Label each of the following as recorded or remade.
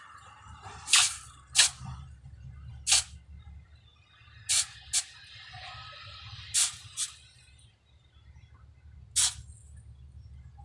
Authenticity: recorded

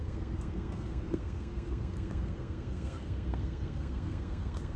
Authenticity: remade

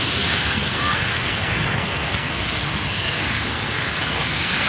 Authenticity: remade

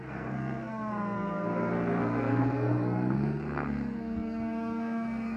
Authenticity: remade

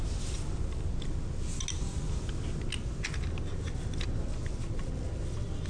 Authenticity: recorded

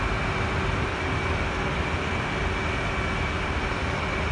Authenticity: recorded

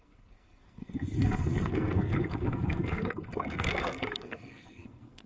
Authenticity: remade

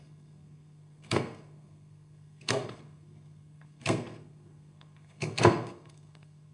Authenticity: remade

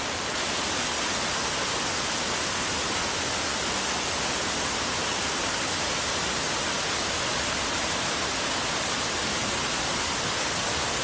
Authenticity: recorded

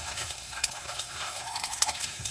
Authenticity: remade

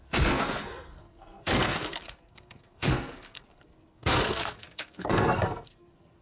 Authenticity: remade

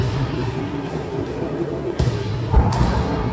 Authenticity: remade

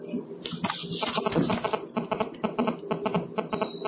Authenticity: recorded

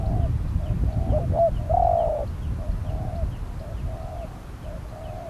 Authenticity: recorded